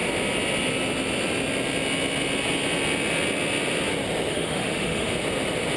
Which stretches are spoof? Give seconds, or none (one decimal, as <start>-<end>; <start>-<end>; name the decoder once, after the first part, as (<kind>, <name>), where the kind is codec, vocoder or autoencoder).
4.3-5.1 (autoencoder, DAC-VAE)